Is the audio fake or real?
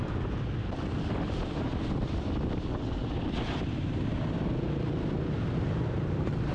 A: real